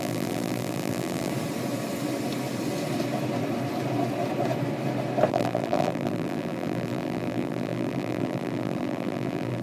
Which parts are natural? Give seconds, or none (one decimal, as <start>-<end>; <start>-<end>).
1.3-5.3